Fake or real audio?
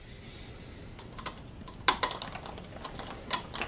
real